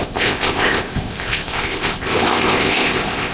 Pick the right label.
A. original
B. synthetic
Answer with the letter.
B